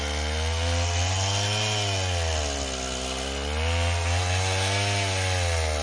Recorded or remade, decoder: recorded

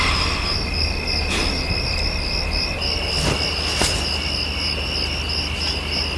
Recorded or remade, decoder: recorded